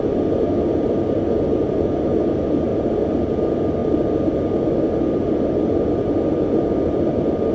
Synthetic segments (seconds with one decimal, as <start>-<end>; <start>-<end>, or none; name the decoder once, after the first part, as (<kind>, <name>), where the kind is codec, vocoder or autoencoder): none